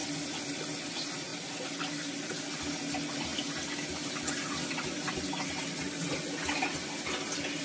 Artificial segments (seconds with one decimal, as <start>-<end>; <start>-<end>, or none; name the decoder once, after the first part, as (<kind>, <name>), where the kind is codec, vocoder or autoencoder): none